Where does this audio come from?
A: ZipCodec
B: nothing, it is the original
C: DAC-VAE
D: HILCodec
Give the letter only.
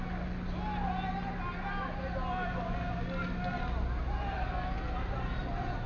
B